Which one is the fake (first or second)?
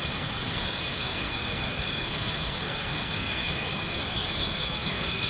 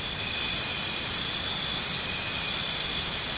first